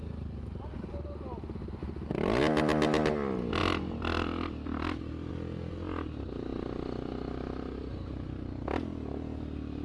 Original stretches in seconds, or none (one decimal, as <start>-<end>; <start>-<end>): 0.0-9.8

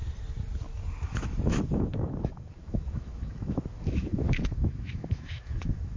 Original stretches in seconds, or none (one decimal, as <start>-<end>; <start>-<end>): 0.0-1.1

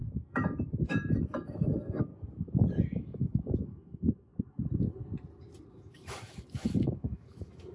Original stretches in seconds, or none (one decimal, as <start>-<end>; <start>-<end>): 2.1-2.7; 4.3-5.7

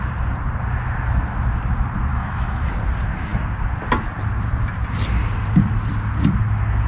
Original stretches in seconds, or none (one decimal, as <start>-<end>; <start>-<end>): 0.0-2.1; 2.7-6.9

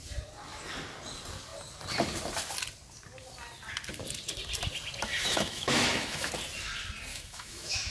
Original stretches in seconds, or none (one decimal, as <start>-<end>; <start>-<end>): 0.0-5.1; 6.3-7.1

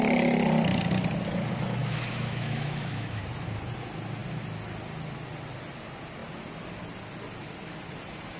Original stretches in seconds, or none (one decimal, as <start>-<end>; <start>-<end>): 0.0-1.8; 3.2-8.4

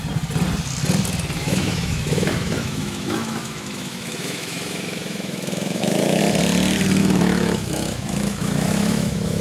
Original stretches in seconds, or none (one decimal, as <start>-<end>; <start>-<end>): 0.0-1.4; 6.2-7.0

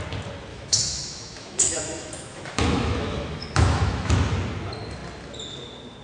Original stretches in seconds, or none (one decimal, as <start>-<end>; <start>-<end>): 0.0-0.5; 4.1-6.0